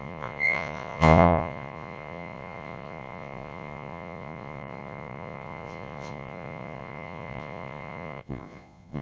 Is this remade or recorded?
remade